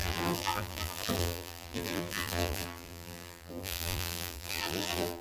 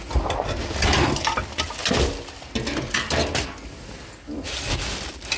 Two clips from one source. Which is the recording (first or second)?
second